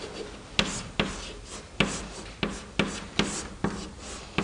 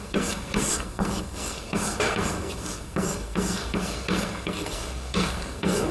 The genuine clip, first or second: first